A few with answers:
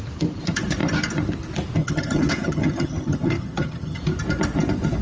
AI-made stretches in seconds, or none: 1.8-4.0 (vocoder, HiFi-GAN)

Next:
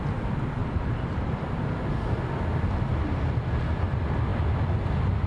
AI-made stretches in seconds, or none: 0.6-1.4 (vocoder, BigVGAN v2)